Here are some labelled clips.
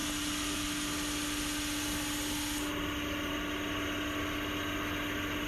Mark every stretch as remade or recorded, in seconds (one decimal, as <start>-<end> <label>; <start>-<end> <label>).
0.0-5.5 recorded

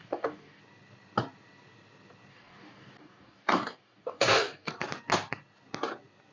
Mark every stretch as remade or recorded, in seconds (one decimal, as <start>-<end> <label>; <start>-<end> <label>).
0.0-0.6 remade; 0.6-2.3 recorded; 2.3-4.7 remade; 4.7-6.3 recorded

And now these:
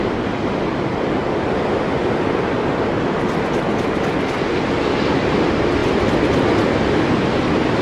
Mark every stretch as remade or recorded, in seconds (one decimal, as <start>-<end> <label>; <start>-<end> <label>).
0.0-7.8 recorded

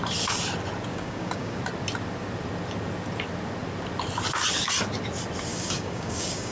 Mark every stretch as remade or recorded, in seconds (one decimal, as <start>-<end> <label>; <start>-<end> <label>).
0.0-0.9 recorded; 0.9-1.6 remade; 1.6-5.5 recorded; 5.5-6.5 remade